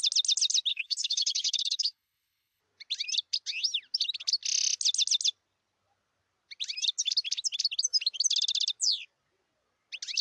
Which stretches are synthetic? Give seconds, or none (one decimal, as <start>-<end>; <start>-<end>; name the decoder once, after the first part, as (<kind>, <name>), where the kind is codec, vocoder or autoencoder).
0.7-2.6 (codec, HILCodec)